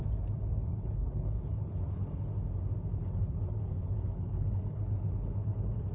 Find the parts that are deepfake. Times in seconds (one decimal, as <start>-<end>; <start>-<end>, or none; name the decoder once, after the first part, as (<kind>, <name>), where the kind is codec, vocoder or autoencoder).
0.7-2.3 (codec, HILCodec); 3.0-5.9